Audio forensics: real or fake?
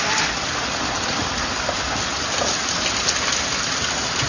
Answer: real